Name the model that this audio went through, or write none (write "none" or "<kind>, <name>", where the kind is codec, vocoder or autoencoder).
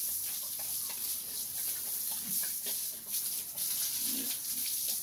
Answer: vocoder, BigVGAN v2